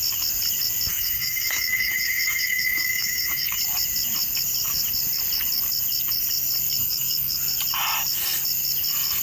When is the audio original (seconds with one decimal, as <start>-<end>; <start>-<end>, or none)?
0.0-0.9; 3.6-6.8; 7.4-9.2